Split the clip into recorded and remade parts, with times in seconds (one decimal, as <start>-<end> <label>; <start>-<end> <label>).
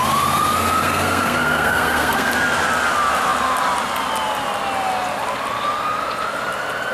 0.0-0.8 recorded; 0.8-2.3 remade; 2.3-6.9 recorded